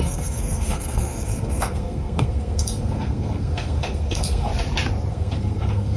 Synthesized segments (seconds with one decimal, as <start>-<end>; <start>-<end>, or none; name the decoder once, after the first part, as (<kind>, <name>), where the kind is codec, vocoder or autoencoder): 0.0-4.5 (codec, SNAC); 5.1-6.0